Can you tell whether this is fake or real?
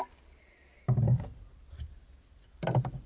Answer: real